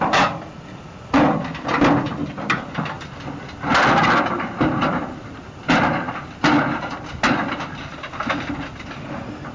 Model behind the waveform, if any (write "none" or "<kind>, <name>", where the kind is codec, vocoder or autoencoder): none